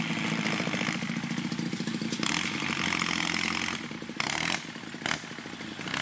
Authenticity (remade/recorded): recorded